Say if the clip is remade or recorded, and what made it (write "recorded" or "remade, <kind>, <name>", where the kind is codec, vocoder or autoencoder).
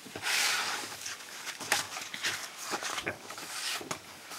remade, codec, DAC